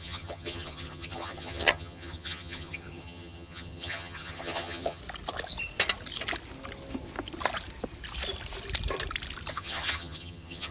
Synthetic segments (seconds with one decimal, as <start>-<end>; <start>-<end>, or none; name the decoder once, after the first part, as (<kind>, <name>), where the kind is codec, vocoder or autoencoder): 0.0-5.0 (vocoder, HiFi-GAN); 9.5-10.7